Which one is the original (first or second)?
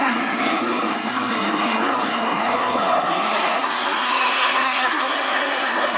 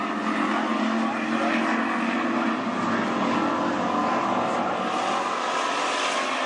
second